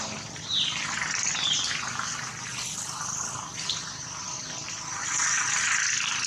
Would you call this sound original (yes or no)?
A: yes